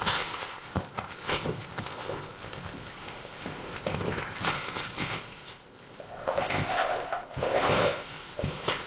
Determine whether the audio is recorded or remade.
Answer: remade